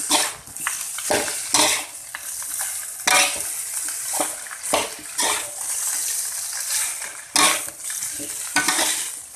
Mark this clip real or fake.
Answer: real